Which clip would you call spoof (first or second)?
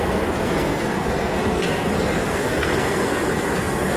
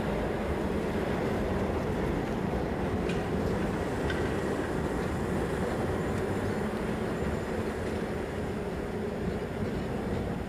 first